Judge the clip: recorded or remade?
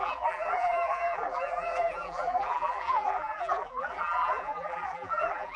remade